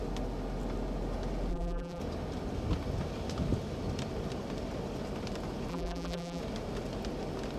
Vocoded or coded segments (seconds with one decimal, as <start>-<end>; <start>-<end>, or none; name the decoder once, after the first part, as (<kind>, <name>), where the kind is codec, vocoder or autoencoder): 1.5-2.0 (vocoder, BigVGAN v2); 5.7-6.4